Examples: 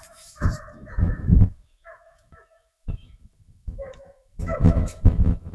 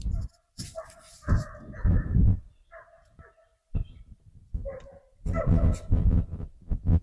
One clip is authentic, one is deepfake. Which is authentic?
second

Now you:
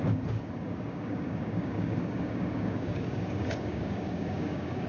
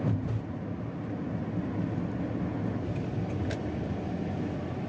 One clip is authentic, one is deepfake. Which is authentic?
second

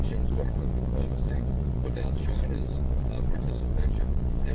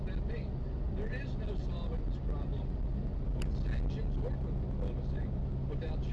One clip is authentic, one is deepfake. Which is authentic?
second